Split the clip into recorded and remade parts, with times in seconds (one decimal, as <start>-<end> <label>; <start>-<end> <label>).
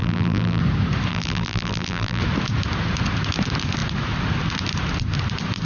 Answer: 0.0-0.6 remade; 0.6-1.1 recorded; 1.1-2.2 remade; 2.2-5.7 recorded